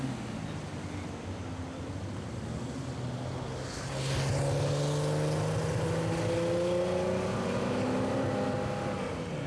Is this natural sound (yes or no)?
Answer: yes